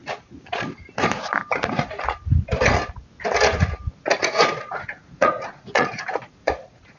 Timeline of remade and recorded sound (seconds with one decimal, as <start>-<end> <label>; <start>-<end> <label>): 0.0-4.2 recorded; 4.2-7.0 remade